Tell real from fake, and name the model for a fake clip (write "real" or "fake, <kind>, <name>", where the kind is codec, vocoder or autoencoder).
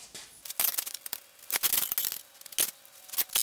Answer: real